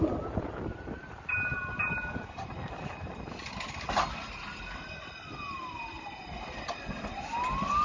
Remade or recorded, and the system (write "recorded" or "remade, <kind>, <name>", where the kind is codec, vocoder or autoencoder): recorded